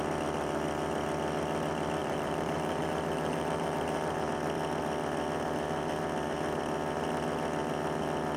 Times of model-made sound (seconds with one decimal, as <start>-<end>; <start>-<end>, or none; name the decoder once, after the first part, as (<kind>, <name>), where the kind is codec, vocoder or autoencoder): 2.0-4.3 (vocoder, BigVGAN v2)